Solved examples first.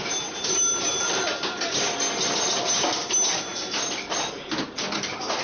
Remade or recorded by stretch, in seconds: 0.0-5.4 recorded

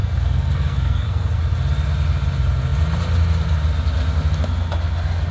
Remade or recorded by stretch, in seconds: 0.0-1.4 remade; 1.4-5.3 recorded

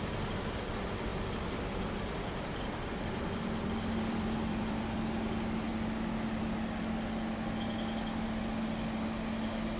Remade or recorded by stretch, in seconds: 0.0-1.1 recorded; 1.1-5.0 remade; 5.0-9.8 recorded